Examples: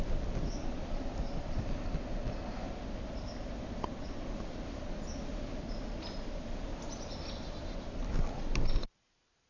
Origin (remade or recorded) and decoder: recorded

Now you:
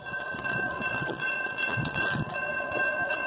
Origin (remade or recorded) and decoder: remade, vocoder, Vocos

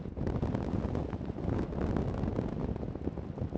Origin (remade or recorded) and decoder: recorded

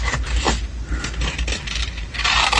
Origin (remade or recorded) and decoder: recorded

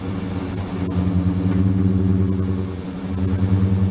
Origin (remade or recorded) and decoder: recorded